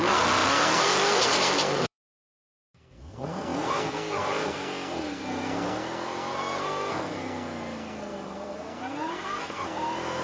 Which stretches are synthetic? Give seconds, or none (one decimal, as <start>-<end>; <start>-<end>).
0.0-10.2